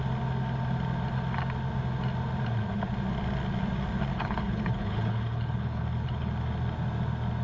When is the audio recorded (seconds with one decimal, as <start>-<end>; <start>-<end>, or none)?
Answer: 0.0-4.1; 6.3-7.4